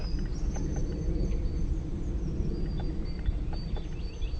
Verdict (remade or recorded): recorded